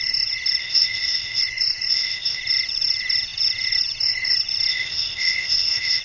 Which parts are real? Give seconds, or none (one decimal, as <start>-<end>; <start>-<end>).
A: 0.0-0.6; 1.4-1.9; 2.4-4.7